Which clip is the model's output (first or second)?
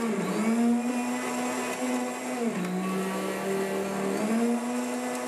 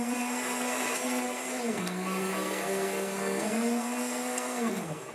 second